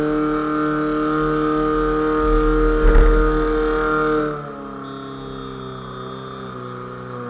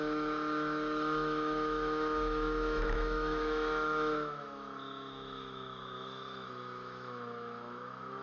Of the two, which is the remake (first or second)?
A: second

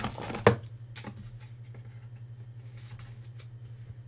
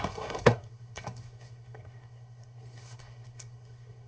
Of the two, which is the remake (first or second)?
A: second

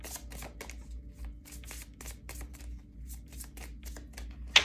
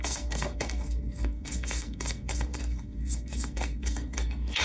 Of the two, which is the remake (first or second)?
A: second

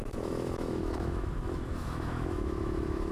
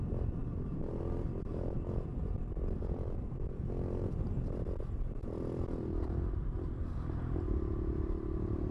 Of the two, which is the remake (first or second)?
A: first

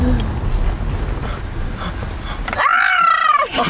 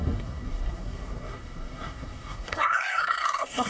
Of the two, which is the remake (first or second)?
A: second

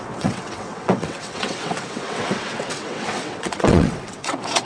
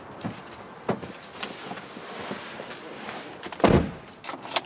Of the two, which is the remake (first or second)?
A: first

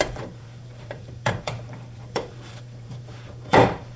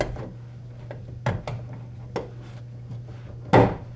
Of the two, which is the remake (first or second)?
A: first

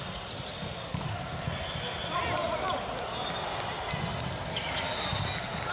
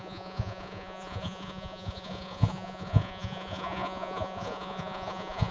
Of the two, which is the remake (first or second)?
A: second